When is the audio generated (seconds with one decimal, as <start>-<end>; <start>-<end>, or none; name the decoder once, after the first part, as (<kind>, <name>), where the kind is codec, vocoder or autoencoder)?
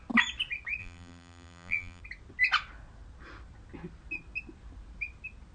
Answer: 0.8-2.0 (vocoder, BigVGAN v2)